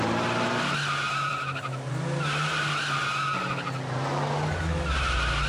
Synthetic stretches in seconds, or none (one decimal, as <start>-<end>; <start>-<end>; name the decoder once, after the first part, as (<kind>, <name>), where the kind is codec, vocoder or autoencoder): none